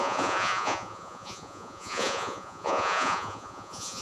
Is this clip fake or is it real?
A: fake